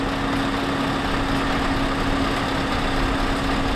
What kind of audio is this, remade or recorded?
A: recorded